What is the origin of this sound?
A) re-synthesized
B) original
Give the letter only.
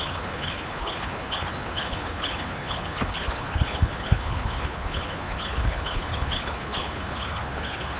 A